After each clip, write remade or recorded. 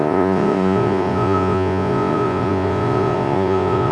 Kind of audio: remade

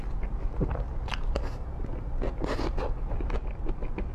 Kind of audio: recorded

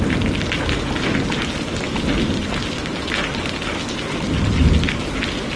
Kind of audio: recorded